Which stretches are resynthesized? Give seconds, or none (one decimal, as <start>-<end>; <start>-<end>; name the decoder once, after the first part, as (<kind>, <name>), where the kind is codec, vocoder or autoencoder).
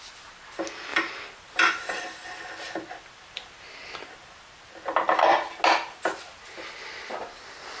0.9-4.0 (vocoder, BigVGAN v2)